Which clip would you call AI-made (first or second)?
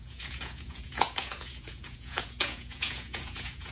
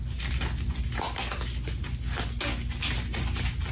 first